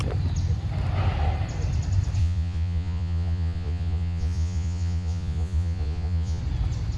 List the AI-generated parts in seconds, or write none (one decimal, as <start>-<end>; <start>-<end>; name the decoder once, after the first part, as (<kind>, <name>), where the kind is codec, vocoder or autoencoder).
2.2-6.4 (vocoder, Vocos)